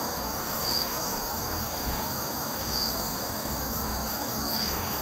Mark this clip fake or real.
fake